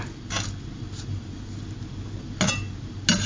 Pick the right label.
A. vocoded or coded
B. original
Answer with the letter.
B